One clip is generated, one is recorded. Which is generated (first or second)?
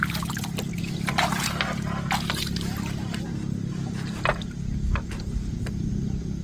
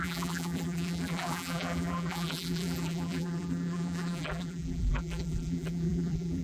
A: second